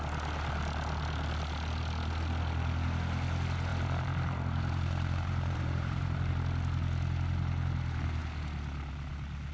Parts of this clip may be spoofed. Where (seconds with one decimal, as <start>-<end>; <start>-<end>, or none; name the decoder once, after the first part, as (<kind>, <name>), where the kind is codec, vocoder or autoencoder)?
3.7-6.3 (vocoder, BigVGAN v2)

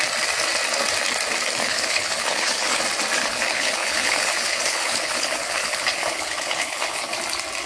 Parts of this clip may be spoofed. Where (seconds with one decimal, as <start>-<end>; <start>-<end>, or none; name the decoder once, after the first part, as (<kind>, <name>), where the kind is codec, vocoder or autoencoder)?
1.6-2.8 (codec, HILCodec); 3.3-7.2

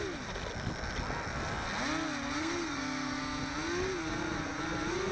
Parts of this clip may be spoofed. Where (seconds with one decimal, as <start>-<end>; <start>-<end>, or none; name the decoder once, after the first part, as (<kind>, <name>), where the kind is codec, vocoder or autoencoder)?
2.4-3.2 (codec, SNAC)

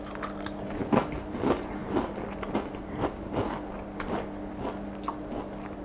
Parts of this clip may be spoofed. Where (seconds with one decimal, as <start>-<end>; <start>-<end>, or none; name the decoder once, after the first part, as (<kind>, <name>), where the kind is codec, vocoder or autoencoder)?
none

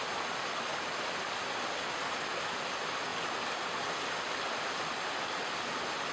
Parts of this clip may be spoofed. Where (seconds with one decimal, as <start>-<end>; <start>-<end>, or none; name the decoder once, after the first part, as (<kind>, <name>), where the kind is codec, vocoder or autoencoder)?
none

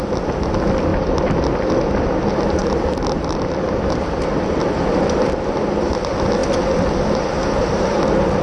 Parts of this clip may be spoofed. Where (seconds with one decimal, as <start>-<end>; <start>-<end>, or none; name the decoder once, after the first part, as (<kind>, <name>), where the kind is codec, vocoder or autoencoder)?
0.9-1.7 (vocoder, BigVGAN v2); 2.6-4.6

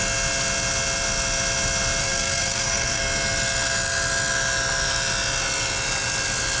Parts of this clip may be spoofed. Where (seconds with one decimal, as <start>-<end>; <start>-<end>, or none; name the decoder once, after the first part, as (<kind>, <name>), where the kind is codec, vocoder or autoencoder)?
2.0-3.0 (codec, SNAC)